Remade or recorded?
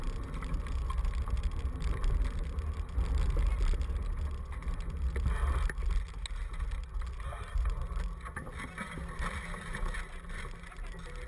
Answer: recorded